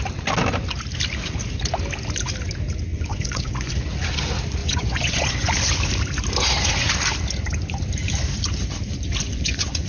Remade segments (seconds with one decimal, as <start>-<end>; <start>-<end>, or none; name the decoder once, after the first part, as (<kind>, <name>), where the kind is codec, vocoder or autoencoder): 2.9-3.7 (vocoder, Vocos); 4.6-5.5; 9.2-9.9

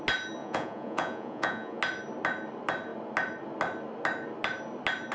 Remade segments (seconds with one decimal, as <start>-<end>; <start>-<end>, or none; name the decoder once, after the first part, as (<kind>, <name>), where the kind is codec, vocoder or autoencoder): 0.4-1.8 (vocoder, Vocos)

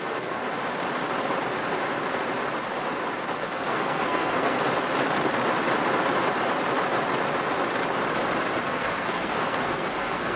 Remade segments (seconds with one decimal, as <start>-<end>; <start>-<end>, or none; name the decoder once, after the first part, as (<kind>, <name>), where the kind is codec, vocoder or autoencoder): 0.0-0.4 (codec, SNAC); 3.4-4.6; 8.6-10.4

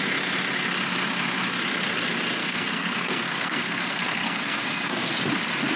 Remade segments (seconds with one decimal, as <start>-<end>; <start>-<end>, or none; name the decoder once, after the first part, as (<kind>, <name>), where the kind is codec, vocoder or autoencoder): 2.4-5.1 (codec, SNAC)

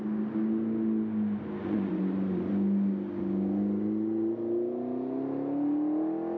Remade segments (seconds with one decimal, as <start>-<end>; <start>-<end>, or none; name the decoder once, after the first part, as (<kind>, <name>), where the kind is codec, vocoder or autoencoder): 1.6-2.5 (vocoder, Vocos)

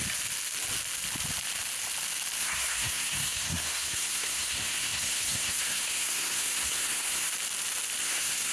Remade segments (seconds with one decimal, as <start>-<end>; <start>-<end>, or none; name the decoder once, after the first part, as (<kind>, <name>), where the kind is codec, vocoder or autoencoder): 2.4-7.3 (codec, SNAC); 8.0-8.5

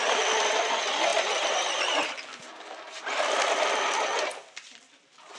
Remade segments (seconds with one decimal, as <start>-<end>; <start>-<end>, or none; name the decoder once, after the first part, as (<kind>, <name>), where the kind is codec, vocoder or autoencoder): none